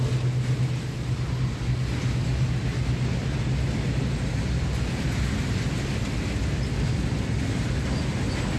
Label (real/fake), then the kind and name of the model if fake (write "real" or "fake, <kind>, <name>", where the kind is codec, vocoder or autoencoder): real